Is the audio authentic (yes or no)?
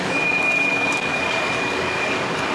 no